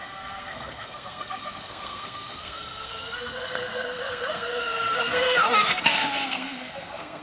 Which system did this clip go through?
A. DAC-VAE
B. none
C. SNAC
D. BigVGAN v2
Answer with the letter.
C